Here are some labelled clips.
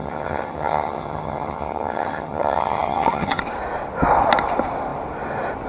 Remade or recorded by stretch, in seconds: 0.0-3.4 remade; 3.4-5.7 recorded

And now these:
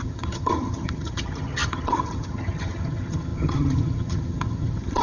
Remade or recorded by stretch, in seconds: 0.0-5.0 remade

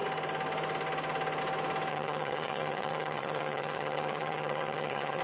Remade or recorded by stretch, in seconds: 0.0-1.9 recorded; 1.9-5.2 remade

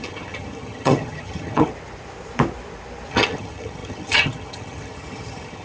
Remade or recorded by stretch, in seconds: 0.0-1.7 remade; 1.7-3.1 recorded; 3.1-5.6 remade